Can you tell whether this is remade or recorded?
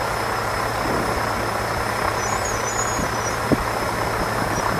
recorded